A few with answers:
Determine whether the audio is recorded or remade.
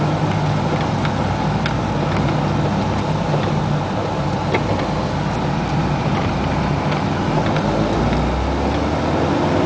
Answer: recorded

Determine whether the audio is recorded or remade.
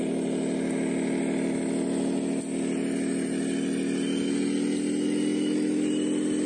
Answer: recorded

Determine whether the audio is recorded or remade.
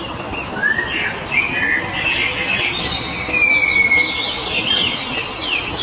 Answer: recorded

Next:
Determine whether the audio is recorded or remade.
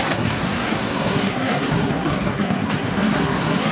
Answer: remade